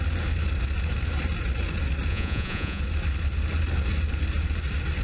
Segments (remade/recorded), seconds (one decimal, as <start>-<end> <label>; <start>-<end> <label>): 0.0-2.1 recorded; 2.1-2.8 remade; 2.8-5.0 recorded

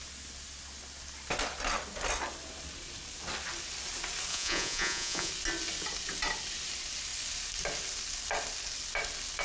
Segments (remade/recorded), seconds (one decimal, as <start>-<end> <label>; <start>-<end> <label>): 0.0-4.3 recorded; 4.3-5.3 remade; 5.3-9.4 recorded